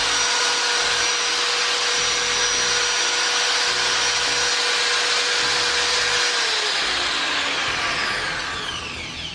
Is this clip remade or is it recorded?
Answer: recorded